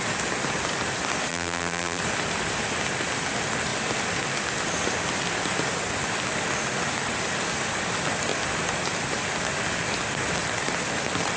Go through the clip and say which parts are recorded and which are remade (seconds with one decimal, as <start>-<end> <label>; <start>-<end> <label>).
0.0-1.3 recorded; 1.3-2.0 remade; 2.0-11.4 recorded